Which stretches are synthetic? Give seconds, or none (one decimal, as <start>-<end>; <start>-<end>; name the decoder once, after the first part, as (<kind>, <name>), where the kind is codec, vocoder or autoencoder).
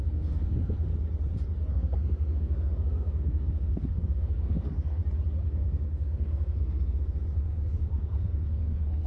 0.0-0.9 (codec, SNAC); 1.7-5.0; 5.5-9.1